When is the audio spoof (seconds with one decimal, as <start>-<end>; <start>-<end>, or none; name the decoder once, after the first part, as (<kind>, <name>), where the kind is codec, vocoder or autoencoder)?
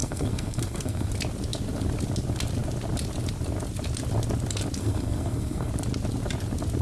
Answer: 0.0-1.1 (codec, SNAC); 4.8-5.7